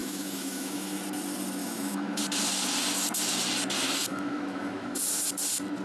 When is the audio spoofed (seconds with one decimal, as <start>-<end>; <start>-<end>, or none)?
0.0-1.0; 1.6-2.2; 4.1-5.0